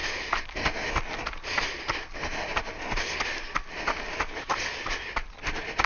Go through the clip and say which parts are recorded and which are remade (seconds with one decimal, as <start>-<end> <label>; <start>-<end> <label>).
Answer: 0.0-5.9 recorded